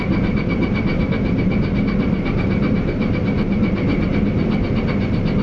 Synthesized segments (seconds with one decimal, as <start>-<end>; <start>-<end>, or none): none